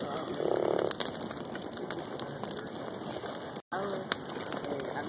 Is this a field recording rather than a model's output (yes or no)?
yes